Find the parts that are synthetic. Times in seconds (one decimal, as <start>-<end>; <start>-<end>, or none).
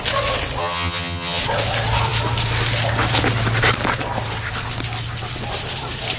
0.6-1.4